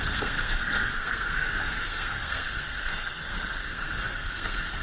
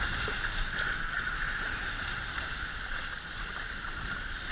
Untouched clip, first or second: second